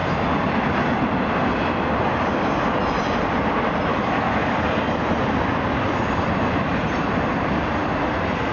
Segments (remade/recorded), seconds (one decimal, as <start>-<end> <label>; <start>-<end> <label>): 0.0-3.9 recorded; 3.9-4.5 remade; 4.5-8.5 recorded